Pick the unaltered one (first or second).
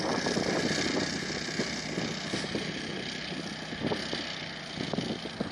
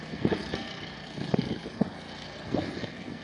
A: first